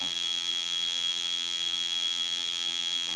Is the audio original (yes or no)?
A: no